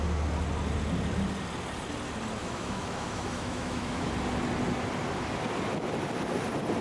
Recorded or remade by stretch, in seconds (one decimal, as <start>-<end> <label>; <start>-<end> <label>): 0.0-2.4 recorded; 2.4-4.1 remade; 4.1-6.8 recorded